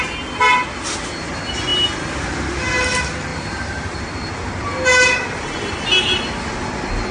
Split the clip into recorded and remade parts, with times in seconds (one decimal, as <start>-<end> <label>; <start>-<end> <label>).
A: 0.0-3.3 recorded; 3.3-4.1 remade; 4.1-4.9 recorded; 4.9-5.8 remade; 5.8-7.1 recorded